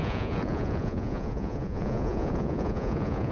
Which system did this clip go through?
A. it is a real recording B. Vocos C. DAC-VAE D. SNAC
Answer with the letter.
B